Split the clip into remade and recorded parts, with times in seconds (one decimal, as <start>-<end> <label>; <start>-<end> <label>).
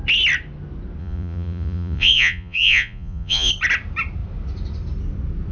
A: 0.0-1.0 recorded; 1.0-3.5 remade; 3.5-5.5 recorded